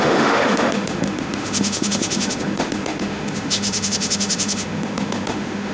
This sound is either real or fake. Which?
fake